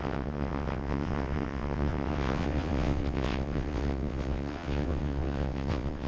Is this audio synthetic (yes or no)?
yes